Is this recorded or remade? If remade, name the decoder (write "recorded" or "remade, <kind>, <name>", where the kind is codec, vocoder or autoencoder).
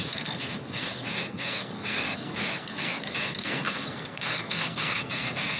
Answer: remade, codec, SNAC